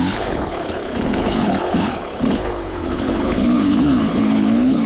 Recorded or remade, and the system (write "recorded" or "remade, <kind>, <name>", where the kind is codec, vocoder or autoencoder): remade, codec, HILCodec